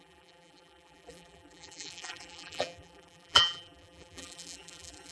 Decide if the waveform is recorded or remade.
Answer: remade